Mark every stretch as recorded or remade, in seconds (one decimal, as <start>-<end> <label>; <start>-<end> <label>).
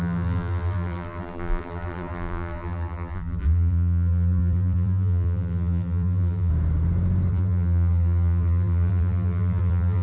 0.0-6.5 remade; 6.5-7.3 recorded; 7.3-10.0 remade